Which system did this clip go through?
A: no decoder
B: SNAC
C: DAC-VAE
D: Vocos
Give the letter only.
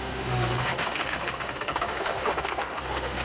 C